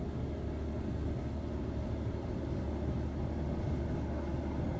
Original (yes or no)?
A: yes